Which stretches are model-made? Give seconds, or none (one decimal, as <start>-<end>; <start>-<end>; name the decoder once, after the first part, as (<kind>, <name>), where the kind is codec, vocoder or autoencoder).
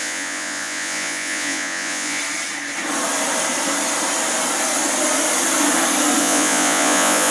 0.0-2.2 (vocoder, Vocos); 6.2-7.3